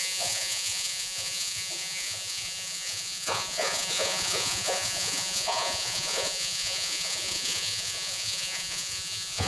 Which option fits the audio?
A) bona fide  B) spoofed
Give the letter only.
B